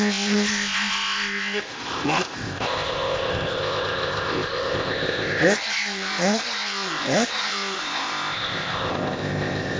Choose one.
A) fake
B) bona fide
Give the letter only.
A